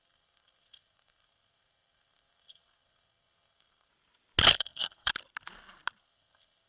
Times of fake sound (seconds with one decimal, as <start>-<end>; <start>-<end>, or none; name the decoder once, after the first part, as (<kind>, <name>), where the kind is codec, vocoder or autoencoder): 0.0-3.9 (codec, SNAC); 4.6-5.1; 6.0-6.7